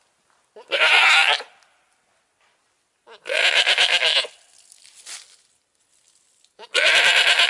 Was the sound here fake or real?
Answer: real